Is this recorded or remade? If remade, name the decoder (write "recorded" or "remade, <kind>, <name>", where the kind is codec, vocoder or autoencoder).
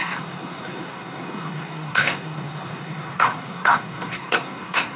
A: remade, codec, SNAC